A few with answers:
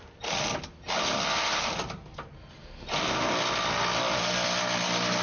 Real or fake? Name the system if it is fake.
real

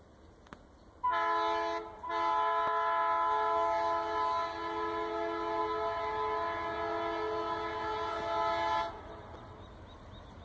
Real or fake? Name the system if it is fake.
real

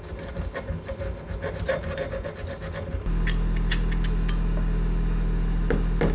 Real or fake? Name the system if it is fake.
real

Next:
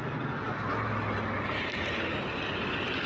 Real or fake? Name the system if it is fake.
real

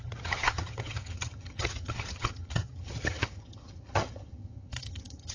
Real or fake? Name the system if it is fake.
fake, vocoder, HiFi-GAN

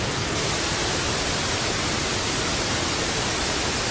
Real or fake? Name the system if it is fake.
real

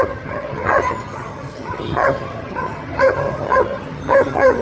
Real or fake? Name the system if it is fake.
fake, vocoder, HiFi-GAN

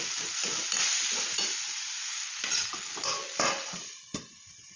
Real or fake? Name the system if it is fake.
real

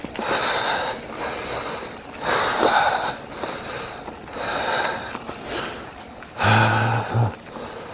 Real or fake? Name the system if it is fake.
real